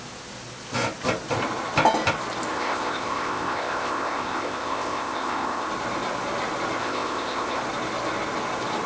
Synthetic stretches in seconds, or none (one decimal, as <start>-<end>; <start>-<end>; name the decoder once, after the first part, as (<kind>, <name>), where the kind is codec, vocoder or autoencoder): 2.5-5.7 (codec, ZipCodec); 6.8-7.6